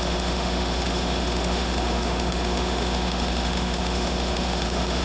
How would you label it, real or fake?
fake